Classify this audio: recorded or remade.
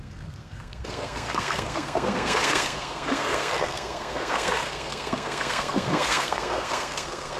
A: remade